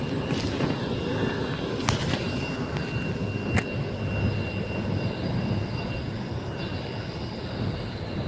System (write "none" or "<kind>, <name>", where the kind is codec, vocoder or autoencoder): none